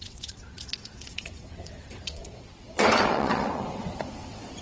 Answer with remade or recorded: remade